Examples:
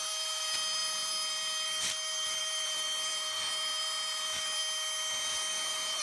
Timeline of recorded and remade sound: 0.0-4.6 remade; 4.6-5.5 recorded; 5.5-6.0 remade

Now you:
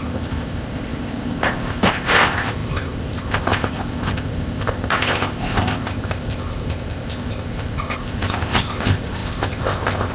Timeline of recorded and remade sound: 0.0-10.1 remade

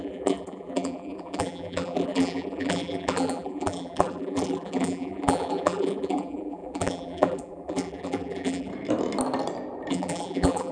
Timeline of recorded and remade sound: 0.0-8.7 remade; 8.7-9.9 recorded; 9.9-10.7 remade